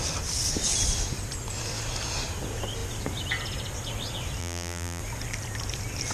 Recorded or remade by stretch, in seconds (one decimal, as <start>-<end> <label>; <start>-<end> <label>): 0.0-4.4 recorded; 4.4-5.0 remade; 5.0-6.1 recorded